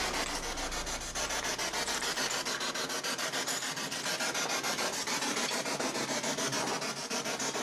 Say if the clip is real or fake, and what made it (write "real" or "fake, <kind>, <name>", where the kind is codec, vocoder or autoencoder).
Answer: real